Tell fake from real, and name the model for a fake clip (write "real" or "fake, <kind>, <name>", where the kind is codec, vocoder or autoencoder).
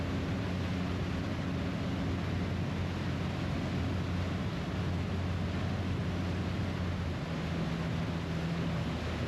real